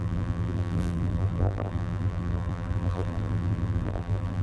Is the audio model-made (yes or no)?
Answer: yes